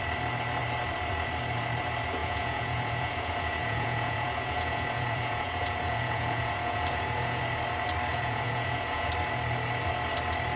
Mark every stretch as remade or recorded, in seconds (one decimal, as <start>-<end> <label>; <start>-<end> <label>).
0.0-2.2 recorded; 2.2-7.4 remade; 7.4-8.1 recorded; 8.1-9.1 remade; 9.1-10.6 recorded

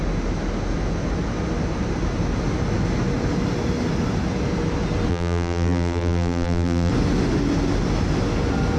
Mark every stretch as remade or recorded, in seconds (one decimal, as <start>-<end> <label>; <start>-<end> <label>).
0.0-5.1 recorded; 5.1-6.9 remade; 6.9-8.8 recorded

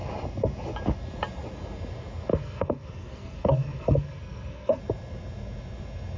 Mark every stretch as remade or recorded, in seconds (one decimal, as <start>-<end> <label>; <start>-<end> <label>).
0.0-2.3 recorded; 2.3-4.8 remade; 4.8-6.2 recorded

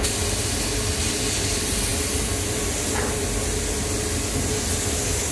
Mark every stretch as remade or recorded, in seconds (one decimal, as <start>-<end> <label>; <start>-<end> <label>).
0.0-5.3 recorded

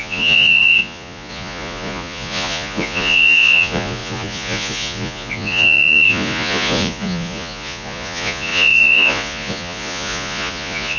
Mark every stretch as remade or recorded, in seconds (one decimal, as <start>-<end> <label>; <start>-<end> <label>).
0.0-11.0 remade

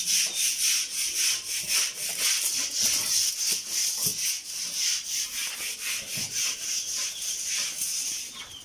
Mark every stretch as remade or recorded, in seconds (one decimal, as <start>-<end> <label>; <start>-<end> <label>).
0.0-8.6 recorded

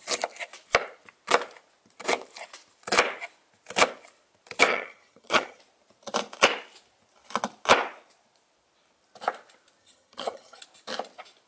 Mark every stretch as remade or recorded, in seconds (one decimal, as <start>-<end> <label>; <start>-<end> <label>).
0.0-4.7 recorded; 4.7-5.6 remade; 5.6-9.8 recorded; 9.8-10.6 remade; 10.6-11.5 recorded